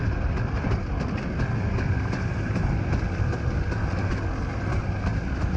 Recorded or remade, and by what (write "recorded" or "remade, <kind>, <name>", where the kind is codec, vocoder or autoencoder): recorded